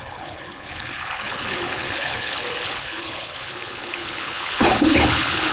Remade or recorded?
remade